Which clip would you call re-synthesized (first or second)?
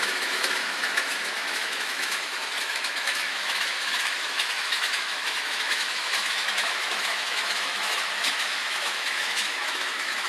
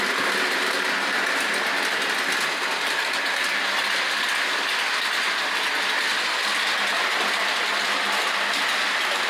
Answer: first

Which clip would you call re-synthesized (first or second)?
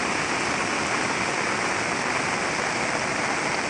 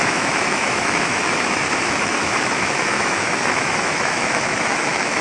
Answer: second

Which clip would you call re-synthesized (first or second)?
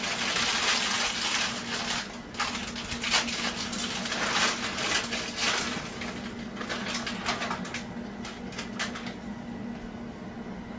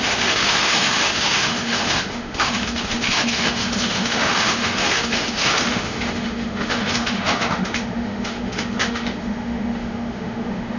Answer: second